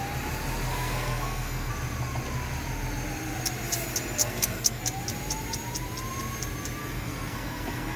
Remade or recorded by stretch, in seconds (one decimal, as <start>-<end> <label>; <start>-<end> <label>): 0.0-0.7 recorded; 0.7-1.7 remade; 1.7-4.2 recorded; 4.2-4.8 remade; 4.8-6.8 recorded; 6.8-8.0 remade